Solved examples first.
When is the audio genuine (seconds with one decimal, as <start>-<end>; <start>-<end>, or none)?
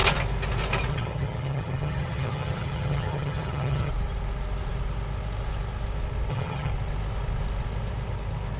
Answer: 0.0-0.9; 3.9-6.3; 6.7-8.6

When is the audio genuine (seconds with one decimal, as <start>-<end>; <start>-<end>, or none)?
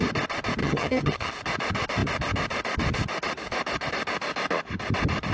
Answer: 0.0-0.6; 1.3-5.3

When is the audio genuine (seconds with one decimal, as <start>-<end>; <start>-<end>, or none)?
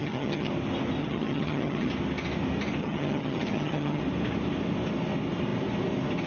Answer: 0.5-1.0; 1.9-2.8; 4.0-6.3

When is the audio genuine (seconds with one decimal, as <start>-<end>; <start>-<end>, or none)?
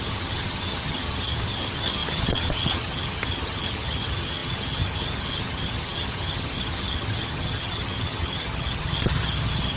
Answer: none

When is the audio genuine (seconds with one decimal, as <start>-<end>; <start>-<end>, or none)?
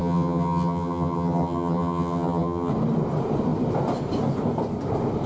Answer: 2.7-5.3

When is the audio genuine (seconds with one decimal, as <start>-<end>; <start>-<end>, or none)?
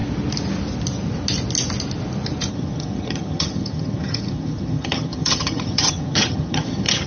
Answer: 0.0-2.5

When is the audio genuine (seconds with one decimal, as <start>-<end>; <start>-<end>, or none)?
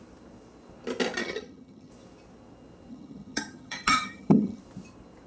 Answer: 0.0-1.2; 1.9-2.9; 4.6-5.3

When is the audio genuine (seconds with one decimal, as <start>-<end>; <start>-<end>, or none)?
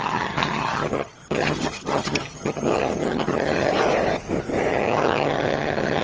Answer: 3.7-4.7